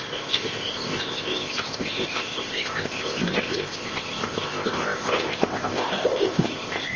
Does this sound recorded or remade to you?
remade